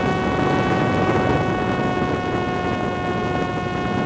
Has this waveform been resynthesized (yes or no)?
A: no